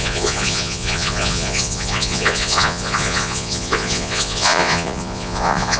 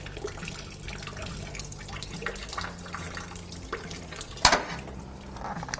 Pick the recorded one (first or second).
second